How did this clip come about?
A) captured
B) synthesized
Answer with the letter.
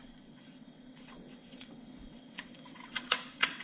B